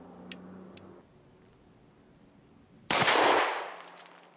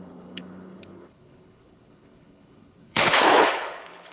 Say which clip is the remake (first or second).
second